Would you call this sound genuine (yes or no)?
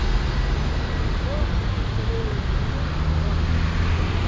yes